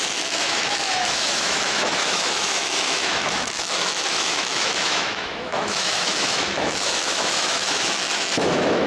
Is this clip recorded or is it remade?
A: remade